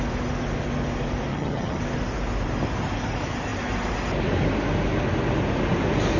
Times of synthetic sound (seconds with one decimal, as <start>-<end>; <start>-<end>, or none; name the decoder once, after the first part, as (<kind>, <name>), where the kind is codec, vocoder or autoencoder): 1.3-1.8 (vocoder, HiFi-GAN)